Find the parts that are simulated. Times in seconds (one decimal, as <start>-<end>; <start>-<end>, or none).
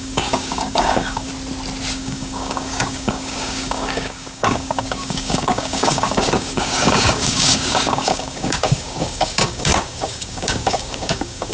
0.0-1.3; 1.9-11.5